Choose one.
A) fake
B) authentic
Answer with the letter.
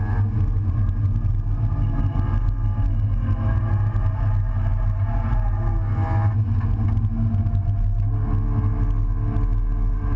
B